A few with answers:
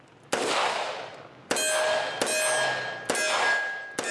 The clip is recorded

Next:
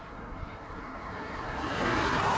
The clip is remade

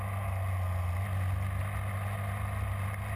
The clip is recorded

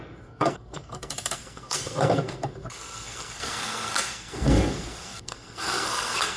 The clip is remade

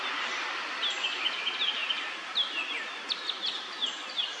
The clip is recorded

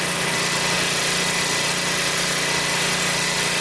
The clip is recorded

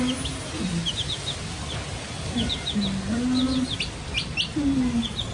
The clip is recorded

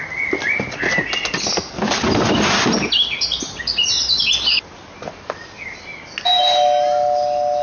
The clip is recorded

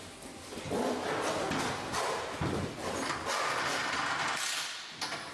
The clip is recorded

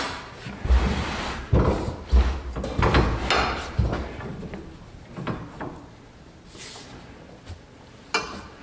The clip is recorded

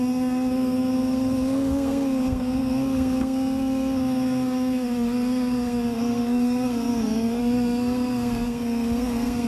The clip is remade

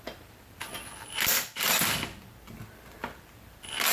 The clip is recorded